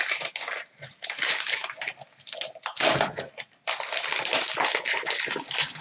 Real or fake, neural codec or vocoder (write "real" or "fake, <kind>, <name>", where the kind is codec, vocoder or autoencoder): real